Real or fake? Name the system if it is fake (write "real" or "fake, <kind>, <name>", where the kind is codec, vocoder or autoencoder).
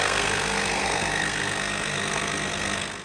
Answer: fake, codec, SNAC